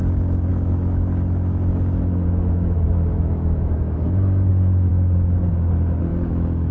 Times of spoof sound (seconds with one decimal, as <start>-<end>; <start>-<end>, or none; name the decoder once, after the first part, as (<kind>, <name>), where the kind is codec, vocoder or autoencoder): 0.5-4.5 (autoencoder, DAC-VAE); 4.9-5.5; 6.1-6.7